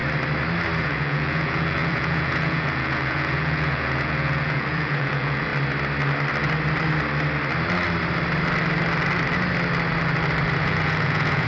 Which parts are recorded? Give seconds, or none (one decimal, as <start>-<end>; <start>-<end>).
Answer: 0.0-0.8; 5.5-10.6